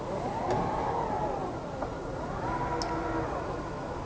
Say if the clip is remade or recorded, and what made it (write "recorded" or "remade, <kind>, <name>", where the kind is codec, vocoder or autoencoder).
recorded